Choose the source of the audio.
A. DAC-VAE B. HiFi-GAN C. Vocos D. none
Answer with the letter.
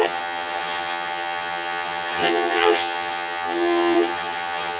B